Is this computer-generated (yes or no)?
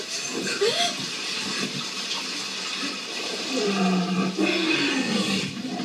no